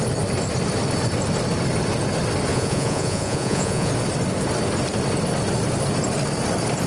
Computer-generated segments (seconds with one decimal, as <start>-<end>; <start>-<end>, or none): 2.5-3.9